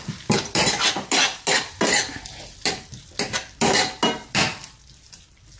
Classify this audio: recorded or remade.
recorded